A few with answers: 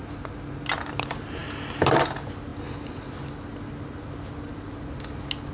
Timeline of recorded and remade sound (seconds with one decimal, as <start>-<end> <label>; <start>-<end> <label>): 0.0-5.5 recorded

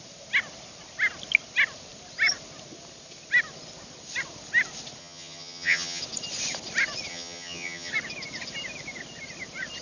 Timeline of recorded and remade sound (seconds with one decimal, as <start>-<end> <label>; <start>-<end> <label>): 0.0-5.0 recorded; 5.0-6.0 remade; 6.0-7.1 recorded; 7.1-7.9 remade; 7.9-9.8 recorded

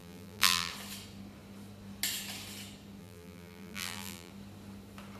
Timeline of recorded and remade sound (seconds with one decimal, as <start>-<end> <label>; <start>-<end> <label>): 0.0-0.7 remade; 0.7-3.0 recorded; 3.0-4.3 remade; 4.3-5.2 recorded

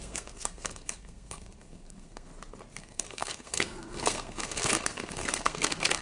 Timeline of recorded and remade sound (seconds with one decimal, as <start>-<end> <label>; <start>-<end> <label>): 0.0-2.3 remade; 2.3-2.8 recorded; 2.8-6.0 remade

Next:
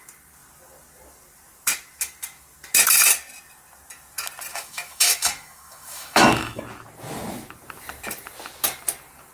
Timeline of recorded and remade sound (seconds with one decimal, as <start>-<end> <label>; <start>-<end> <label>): 0.0-4.5 recorded; 4.5-6.6 remade; 6.6-9.3 recorded

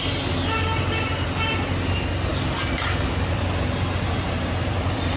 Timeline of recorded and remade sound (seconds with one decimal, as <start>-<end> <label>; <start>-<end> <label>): 0.0-5.2 recorded

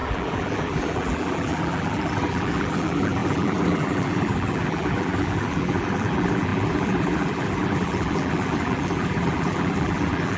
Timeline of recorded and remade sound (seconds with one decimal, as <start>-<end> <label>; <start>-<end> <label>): 0.0-10.4 remade